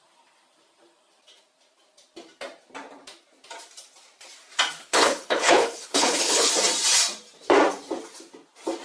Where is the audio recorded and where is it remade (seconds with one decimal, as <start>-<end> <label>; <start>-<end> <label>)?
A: 0.0-4.8 recorded; 4.8-6.5 remade; 6.5-8.8 recorded